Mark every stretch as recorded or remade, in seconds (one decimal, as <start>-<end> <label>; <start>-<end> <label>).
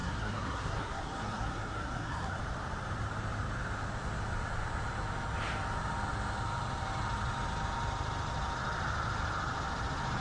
0.0-2.4 remade; 2.4-10.2 recorded